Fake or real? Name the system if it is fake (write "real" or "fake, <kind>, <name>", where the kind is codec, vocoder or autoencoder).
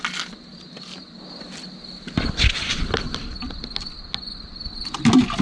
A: real